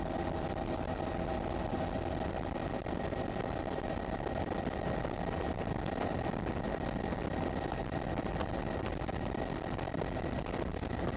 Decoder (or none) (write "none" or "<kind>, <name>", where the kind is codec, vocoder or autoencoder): none